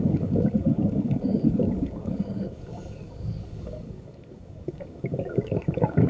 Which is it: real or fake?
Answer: fake